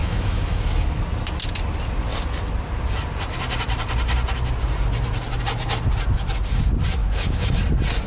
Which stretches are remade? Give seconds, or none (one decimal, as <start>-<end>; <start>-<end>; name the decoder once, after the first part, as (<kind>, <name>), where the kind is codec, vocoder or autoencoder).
0.0-1.0 (autoencoder, DAC-VAE); 7.0-7.5